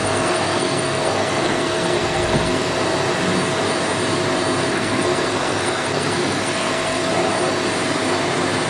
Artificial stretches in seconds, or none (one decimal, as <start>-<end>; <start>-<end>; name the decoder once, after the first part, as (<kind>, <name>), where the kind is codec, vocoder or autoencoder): 0.0-2.7 (codec, SNAC); 4.7-7.1

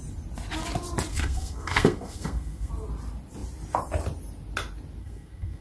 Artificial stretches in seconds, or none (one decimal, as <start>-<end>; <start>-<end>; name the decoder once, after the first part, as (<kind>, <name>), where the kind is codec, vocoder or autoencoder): 1.1-2.7 (codec, SNAC); 5.0-5.6